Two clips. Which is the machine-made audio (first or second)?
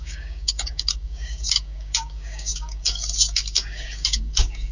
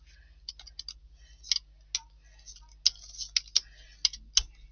first